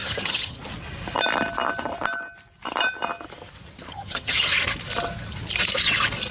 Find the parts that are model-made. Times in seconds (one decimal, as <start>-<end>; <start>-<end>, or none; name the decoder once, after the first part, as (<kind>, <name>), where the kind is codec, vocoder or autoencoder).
0.0-0.6 (vocoder, HiFi-GAN); 3.9-4.5